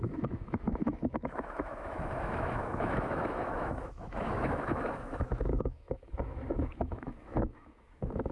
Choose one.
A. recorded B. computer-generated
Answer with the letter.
B